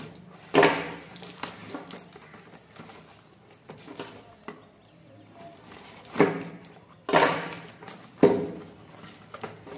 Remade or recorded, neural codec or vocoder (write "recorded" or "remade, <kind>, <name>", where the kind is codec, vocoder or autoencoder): recorded